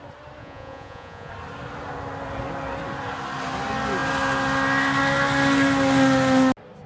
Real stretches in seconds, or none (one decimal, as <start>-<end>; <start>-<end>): 0.0-0.4; 1.3-6.9